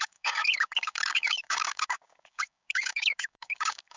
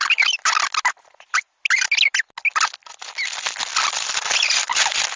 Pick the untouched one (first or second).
second